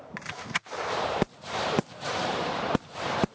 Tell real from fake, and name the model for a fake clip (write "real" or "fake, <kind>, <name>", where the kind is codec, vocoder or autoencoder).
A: fake, vocoder, BigVGAN v2